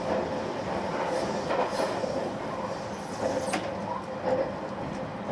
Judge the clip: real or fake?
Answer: real